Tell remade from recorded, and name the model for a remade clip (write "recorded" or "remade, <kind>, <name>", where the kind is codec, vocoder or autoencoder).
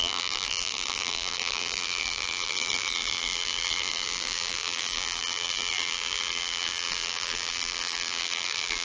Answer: remade, vocoder, BigVGAN v2